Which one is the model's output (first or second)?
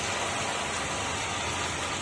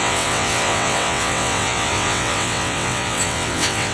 second